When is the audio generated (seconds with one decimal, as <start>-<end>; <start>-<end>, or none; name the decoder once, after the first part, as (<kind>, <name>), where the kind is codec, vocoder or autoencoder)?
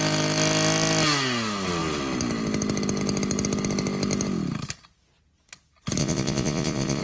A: 6.0-7.0 (vocoder, Vocos)